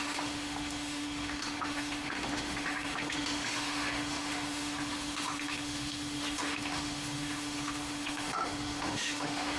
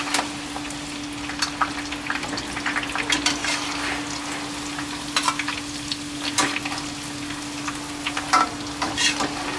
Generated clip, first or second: first